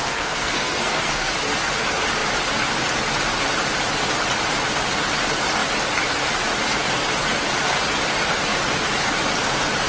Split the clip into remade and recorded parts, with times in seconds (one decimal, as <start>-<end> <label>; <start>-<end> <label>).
0.0-1.3 remade; 1.3-9.9 recorded